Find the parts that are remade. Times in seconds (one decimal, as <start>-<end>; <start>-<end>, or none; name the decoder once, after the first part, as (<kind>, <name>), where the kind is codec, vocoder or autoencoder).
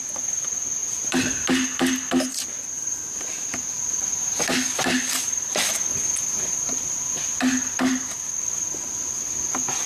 none